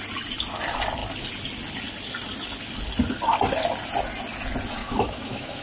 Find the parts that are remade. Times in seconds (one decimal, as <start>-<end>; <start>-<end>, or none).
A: 4.8-5.6